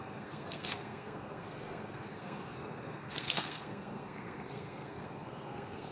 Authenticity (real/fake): fake